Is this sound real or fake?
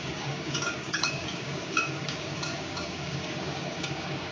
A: fake